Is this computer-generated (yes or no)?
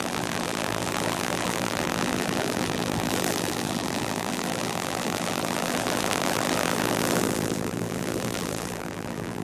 yes